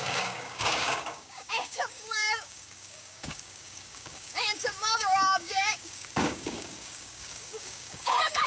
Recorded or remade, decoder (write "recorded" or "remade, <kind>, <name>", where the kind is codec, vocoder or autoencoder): remade, codec, DAC